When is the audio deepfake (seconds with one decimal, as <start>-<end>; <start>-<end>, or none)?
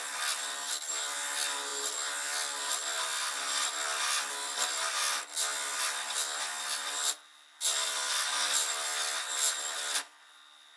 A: none